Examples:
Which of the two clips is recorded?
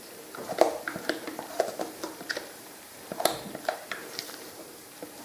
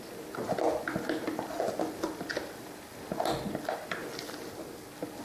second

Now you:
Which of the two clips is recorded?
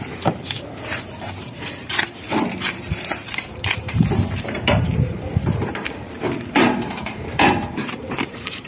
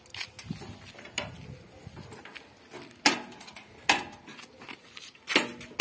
second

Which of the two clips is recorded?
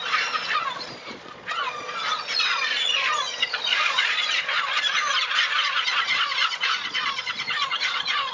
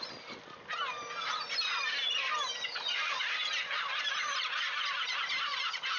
second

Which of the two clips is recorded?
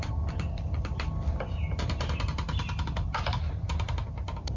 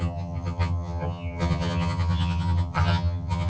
first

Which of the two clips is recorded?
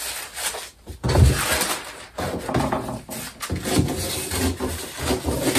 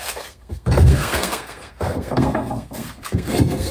first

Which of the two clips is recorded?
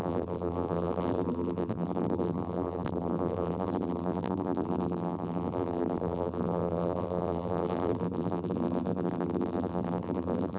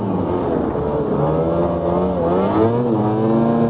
second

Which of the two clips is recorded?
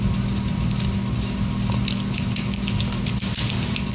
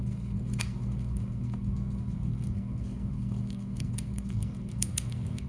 first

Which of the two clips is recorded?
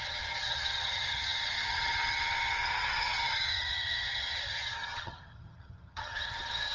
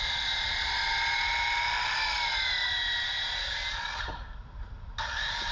second